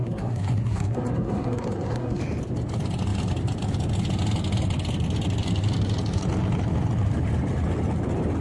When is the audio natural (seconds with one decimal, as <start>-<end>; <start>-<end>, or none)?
2.2-8.4